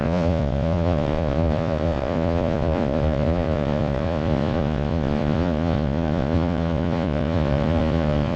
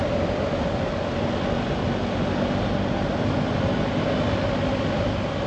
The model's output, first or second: first